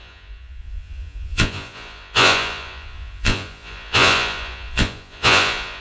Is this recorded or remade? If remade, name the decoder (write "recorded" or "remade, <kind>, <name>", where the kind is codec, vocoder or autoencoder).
remade, vocoder, Vocos